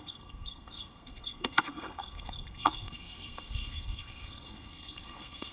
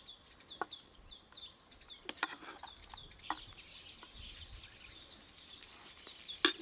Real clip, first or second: second